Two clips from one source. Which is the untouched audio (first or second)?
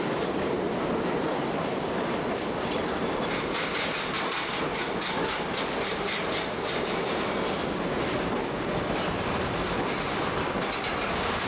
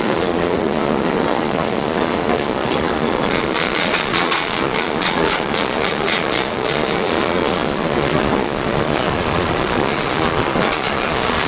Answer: first